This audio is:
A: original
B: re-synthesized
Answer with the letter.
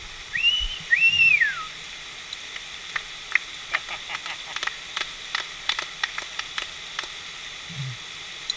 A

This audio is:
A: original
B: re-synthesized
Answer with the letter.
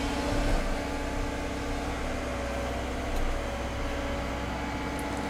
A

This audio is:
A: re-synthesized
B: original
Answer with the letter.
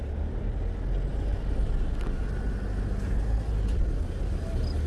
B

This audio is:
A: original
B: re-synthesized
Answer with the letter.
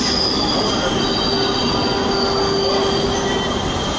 A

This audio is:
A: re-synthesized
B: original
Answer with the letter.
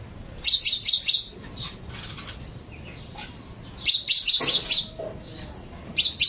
B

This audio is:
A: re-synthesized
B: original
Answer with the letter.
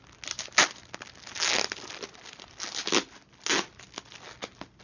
B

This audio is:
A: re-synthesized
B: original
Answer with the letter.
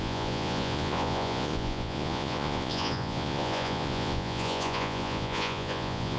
A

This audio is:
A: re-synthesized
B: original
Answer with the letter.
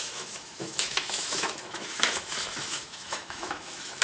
A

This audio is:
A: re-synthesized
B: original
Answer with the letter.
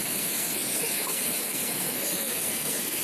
A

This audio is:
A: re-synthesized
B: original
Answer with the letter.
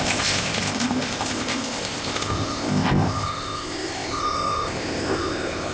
A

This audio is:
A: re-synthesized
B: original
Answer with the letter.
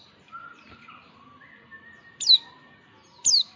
B